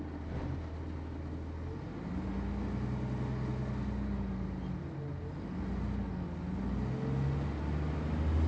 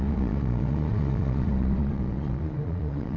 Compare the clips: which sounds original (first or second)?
first